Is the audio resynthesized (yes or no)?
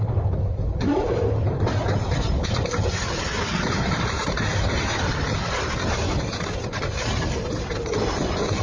yes